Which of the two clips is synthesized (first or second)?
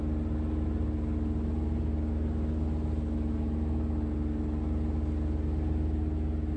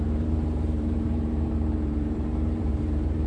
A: second